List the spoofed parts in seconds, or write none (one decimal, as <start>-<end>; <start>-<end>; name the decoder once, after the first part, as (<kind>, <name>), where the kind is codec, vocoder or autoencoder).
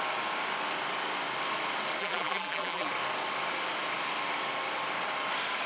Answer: 2.0-2.9 (vocoder, BigVGAN v2)